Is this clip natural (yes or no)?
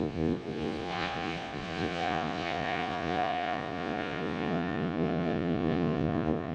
no